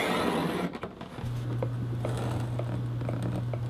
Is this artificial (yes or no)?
no